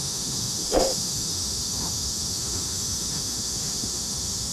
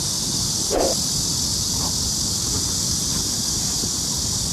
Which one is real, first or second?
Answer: second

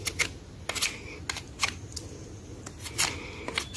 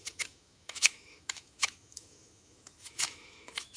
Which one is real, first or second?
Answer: first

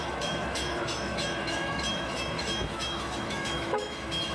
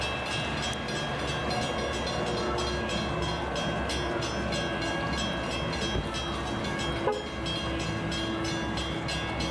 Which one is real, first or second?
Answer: second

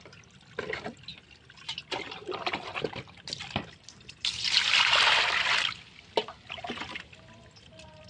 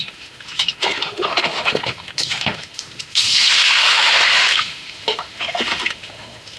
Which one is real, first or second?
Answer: first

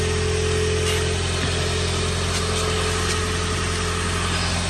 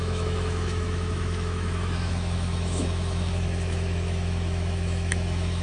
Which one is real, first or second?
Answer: first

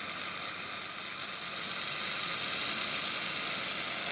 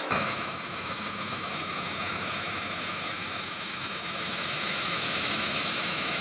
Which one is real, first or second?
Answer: first